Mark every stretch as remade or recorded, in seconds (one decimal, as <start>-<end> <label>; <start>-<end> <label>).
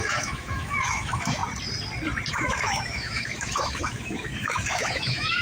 0.0-1.4 remade; 1.4-2.3 recorded; 2.3-5.4 remade